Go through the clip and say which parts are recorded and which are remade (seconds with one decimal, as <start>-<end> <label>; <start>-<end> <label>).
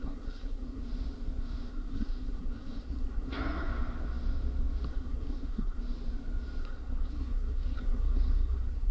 0.0-0.8 remade; 0.8-1.7 recorded; 1.7-3.7 remade; 3.7-4.9 recorded; 4.9-5.8 remade; 5.8-6.6 recorded; 6.6-8.9 remade